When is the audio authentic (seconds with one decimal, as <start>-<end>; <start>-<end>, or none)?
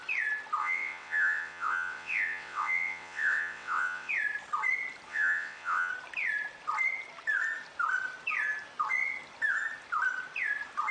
0.0-0.6; 4.1-5.1; 5.9-10.9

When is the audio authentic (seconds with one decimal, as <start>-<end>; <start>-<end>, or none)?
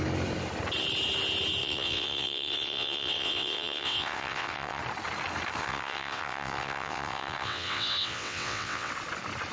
0.0-1.6; 4.8-5.6; 8.9-9.5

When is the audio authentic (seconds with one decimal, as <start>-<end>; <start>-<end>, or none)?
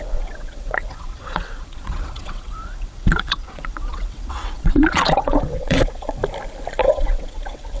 6.2-6.8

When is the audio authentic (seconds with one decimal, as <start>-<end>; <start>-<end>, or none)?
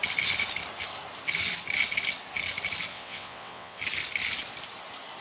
0.0-2.9; 3.8-5.2